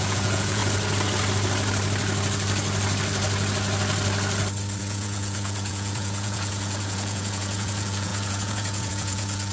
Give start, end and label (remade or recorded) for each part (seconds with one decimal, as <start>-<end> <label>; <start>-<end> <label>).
0.0-0.6 remade; 0.6-4.8 recorded; 4.8-9.5 remade